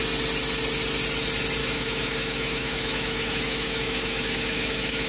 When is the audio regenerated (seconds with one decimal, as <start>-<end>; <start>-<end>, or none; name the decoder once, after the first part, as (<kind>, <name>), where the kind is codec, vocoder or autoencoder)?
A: 1.6-5.1 (autoencoder, DAC-VAE)

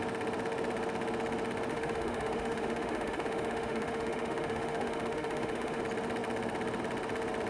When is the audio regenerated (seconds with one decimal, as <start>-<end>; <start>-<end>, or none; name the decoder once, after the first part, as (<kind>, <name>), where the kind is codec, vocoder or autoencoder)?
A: 1.7-5.8 (autoencoder, DAC-VAE)

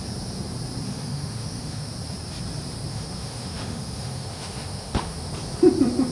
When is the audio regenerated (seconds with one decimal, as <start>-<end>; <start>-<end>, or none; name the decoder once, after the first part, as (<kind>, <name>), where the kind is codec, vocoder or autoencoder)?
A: 0.9-1.9 (autoencoder, DAC-VAE); 2.9-5.3